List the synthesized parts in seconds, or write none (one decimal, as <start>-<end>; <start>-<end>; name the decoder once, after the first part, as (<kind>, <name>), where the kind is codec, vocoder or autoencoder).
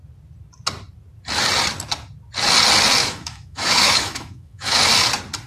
3.0-4.8 (autoencoder, DAC-VAE)